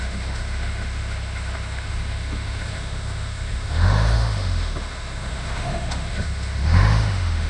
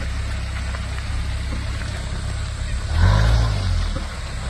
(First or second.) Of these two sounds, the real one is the second